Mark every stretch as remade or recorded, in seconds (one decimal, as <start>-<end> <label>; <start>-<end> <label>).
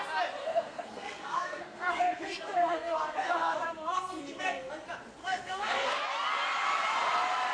0.0-0.4 recorded; 0.4-4.7 remade; 4.7-5.2 recorded; 5.2-6.0 remade; 6.0-7.5 recorded